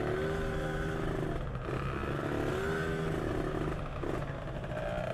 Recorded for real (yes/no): yes